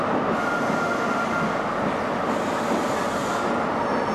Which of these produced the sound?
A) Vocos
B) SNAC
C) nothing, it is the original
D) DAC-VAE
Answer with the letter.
C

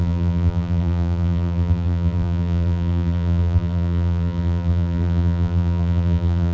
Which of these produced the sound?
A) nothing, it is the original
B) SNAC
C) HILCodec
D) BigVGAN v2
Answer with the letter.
D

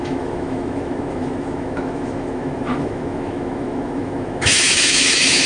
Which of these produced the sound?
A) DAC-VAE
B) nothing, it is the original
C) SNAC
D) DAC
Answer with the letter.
A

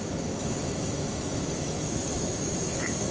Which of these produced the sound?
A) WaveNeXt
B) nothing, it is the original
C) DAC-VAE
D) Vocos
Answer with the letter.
C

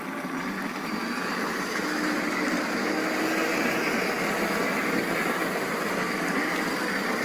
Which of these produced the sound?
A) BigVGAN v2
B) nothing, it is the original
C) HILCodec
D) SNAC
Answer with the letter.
B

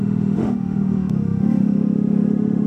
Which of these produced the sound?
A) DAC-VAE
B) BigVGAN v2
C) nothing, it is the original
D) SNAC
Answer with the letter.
A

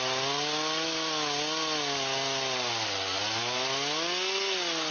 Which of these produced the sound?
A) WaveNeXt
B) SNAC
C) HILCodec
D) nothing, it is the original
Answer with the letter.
D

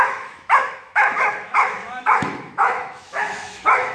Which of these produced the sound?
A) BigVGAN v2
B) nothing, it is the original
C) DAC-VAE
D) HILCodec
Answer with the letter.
C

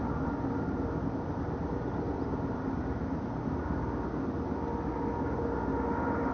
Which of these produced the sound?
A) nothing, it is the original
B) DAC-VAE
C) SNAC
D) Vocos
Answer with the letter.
A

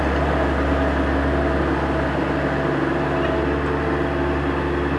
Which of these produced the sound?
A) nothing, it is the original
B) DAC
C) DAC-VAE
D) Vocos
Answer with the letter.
A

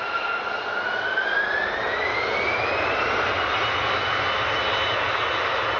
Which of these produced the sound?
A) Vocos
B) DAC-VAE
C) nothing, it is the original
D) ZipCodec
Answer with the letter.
C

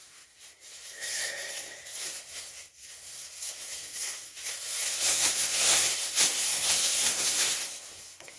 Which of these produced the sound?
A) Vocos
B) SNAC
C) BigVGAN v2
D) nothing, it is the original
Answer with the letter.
B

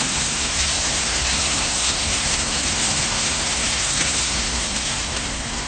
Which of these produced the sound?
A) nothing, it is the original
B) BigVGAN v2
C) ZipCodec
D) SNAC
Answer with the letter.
D